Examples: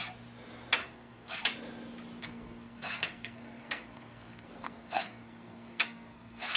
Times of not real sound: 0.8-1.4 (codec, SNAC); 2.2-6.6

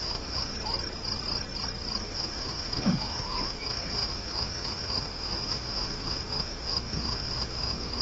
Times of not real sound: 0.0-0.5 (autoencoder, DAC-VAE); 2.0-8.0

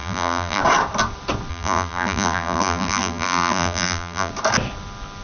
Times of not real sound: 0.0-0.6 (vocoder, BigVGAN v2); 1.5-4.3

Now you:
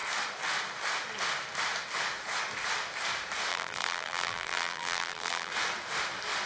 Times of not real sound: 3.5-5.5 (vocoder, BigVGAN v2)